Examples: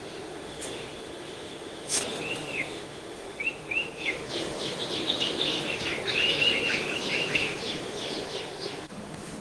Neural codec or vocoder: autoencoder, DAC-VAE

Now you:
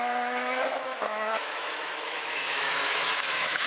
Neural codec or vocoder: autoencoder, DAC-VAE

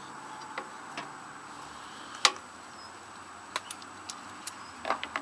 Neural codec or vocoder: none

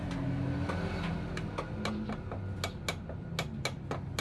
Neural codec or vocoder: none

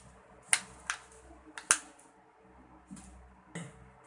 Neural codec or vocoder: none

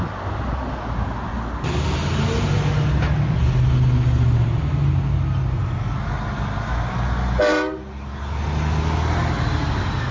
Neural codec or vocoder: none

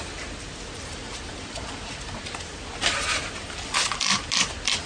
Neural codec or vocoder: none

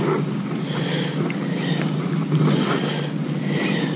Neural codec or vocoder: none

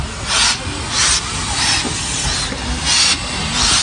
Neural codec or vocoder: none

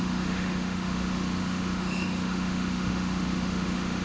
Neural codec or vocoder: autoencoder, DAC-VAE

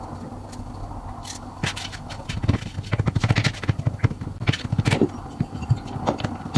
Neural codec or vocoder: none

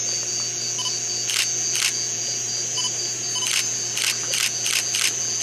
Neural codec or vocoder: none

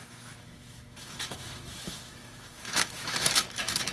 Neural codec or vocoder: autoencoder, DAC-VAE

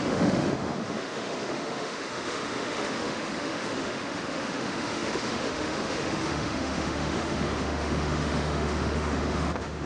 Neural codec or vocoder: autoencoder, DAC-VAE